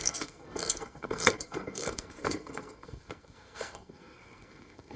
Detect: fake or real fake